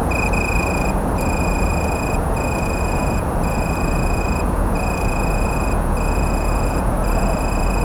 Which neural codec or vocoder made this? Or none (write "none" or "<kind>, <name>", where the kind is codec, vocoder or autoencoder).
vocoder, Vocos